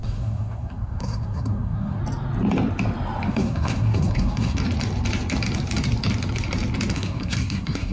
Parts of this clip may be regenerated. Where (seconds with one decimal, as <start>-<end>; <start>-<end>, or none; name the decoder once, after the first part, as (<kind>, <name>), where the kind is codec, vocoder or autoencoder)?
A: 0.0-2.0 (codec, SNAC); 3.3-4.6; 6.9-7.9